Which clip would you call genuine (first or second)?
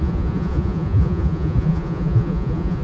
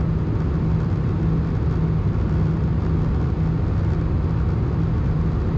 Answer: second